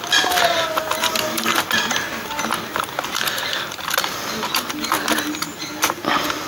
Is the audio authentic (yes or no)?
yes